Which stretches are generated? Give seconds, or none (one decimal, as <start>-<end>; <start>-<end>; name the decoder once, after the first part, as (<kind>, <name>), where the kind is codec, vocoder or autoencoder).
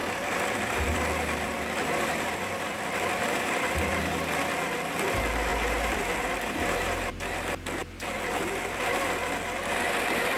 0.0-4.0 (vocoder, BigVGAN v2); 5.5-7.1